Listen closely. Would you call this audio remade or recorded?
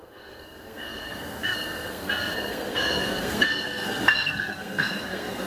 remade